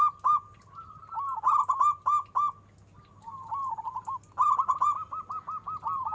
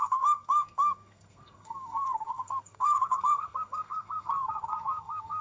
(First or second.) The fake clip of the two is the second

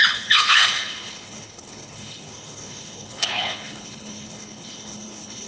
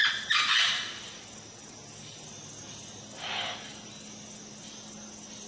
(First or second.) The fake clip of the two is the first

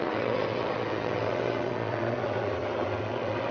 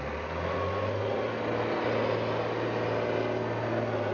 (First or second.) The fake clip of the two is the first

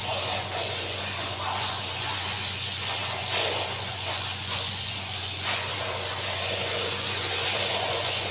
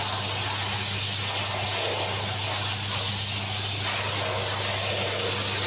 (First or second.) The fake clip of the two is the first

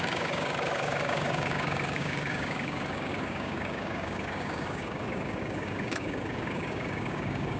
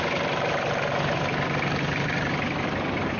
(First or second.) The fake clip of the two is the first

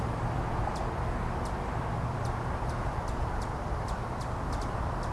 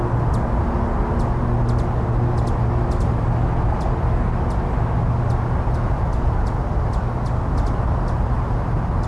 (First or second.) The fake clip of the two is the first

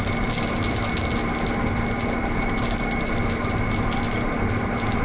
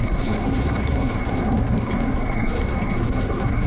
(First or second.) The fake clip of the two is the second